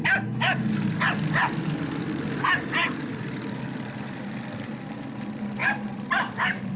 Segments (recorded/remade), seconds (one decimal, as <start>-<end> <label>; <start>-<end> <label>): 0.0-6.8 recorded